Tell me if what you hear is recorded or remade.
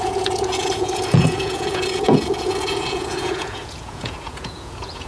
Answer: remade